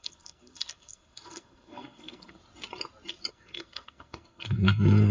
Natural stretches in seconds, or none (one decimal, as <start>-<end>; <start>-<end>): 2.4-3.3